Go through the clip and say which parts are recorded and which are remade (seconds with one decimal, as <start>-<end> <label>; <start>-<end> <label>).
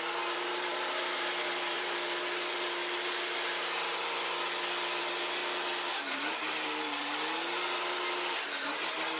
0.0-2.8 remade; 2.8-5.0 recorded; 5.0-5.4 remade; 5.4-8.3 recorded; 8.3-9.2 remade